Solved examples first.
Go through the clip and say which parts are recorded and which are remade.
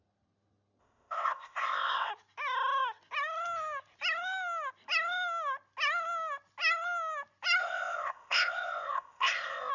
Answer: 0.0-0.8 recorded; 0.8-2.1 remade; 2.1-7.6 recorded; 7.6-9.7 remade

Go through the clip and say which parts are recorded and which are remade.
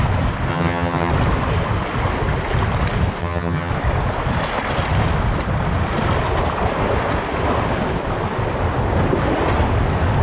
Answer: 0.0-0.5 recorded; 0.5-1.1 remade; 1.1-3.2 recorded; 3.2-3.7 remade; 3.7-10.2 recorded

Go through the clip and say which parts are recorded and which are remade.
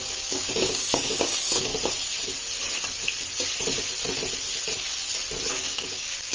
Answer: 0.0-1.7 remade; 1.7-5.5 recorded; 5.5-6.3 remade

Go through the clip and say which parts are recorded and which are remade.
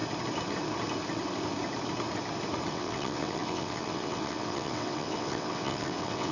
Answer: 0.0-2.7 recorded; 2.7-6.3 remade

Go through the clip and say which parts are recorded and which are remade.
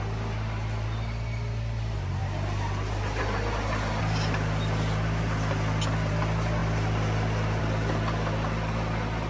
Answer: 0.0-9.3 recorded